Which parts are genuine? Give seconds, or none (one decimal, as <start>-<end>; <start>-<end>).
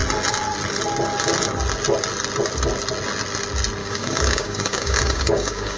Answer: 0.0-3.8